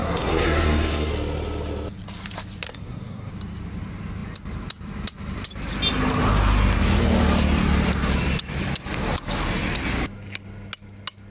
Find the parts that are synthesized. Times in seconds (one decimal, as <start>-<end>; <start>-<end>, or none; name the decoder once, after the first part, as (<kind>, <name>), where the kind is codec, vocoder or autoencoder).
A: 0.0-1.1 (codec, SNAC); 2.7-3.3